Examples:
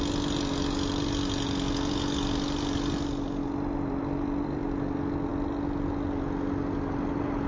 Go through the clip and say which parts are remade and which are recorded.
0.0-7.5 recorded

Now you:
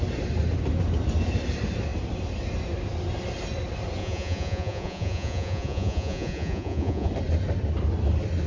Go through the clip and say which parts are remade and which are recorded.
0.0-4.0 recorded; 4.0-7.1 remade; 7.1-8.5 recorded

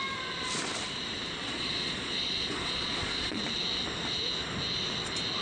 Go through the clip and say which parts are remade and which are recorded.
0.0-1.4 recorded; 1.4-3.4 remade; 3.4-5.4 recorded

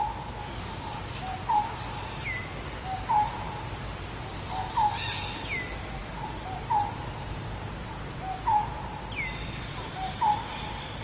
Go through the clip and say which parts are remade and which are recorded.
0.0-11.0 recorded

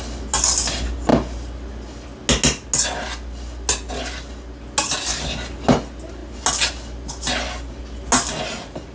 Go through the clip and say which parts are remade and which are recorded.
0.0-8.9 recorded

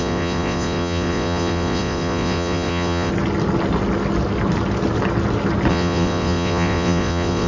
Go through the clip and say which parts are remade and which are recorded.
0.0-3.1 remade; 3.1-5.7 recorded; 5.7-7.5 remade

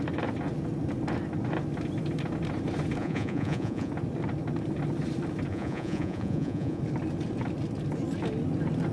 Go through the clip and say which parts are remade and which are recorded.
0.0-3.0 recorded; 3.0-3.9 remade; 3.9-5.5 recorded; 5.5-6.8 remade; 6.8-8.9 recorded